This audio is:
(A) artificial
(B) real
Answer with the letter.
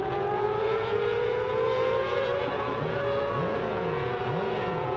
A